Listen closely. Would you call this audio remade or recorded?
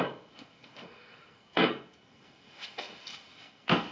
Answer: remade